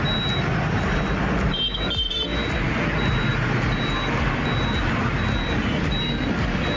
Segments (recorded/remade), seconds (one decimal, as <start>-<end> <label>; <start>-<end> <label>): 0.0-6.8 recorded